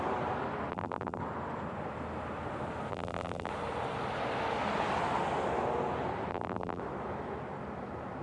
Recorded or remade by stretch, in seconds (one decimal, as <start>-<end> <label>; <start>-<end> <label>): 0.0-0.7 recorded; 0.7-1.2 remade; 1.2-2.9 recorded; 2.9-3.5 remade; 3.5-6.3 recorded; 6.3-6.8 remade; 6.8-8.2 recorded